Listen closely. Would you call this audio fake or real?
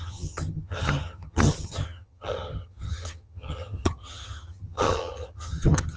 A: fake